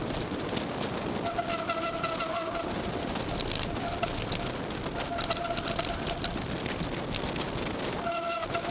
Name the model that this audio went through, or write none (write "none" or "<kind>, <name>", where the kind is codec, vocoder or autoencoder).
none